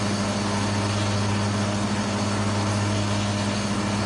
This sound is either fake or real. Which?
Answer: real